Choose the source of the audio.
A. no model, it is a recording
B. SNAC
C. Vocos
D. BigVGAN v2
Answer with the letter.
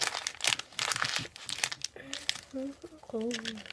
A